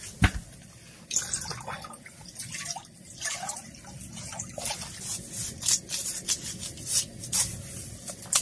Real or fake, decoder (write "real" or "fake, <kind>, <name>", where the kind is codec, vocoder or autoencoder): real